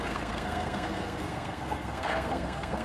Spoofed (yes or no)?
yes